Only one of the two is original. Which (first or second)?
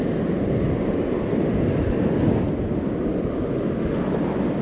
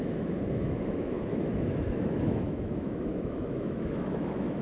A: first